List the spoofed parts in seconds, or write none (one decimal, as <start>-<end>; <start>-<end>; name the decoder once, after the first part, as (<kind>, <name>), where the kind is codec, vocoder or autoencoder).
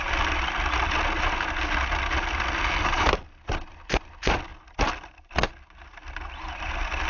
none